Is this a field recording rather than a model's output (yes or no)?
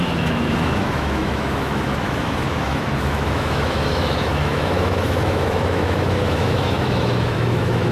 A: no